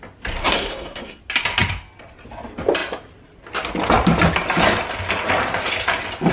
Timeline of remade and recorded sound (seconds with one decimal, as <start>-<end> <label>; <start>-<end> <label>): 0.0-0.4 recorded; 0.4-1.2 remade; 1.2-6.3 recorded